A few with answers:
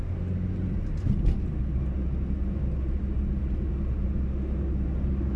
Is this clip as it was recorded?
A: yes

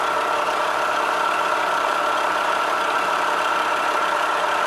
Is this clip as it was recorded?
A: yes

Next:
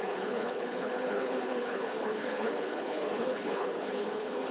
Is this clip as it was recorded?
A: no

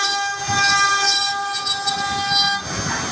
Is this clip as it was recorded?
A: yes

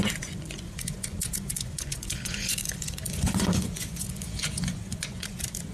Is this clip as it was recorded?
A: no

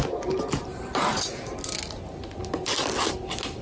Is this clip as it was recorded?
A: yes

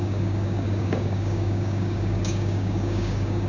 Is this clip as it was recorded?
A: no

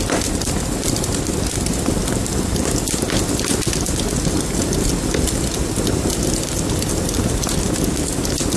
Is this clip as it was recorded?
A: yes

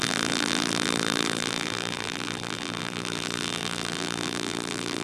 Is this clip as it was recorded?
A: no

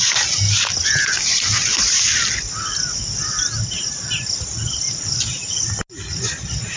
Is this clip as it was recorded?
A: yes